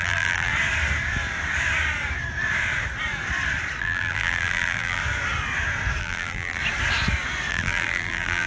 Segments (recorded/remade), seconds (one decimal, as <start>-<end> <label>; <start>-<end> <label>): 0.0-0.5 remade; 0.5-3.8 recorded; 3.8-5.0 remade; 5.0-6.0 recorded; 6.0-6.6 remade; 6.6-7.5 recorded; 7.5-8.5 remade